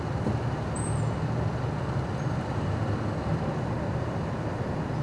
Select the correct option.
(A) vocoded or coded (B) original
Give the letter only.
B